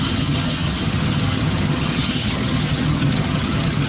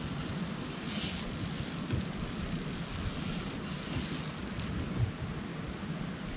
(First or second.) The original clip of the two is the second